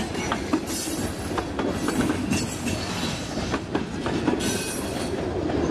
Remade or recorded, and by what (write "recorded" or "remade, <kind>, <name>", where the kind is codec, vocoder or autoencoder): recorded